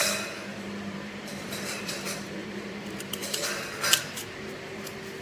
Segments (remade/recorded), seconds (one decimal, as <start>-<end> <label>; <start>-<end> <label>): 0.0-0.5 recorded; 0.5-3.6 remade; 3.6-5.2 recorded